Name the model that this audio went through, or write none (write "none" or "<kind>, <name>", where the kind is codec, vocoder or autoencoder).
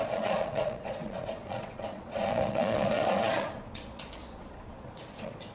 vocoder, Vocos